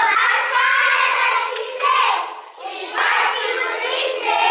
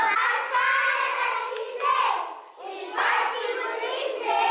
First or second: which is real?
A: second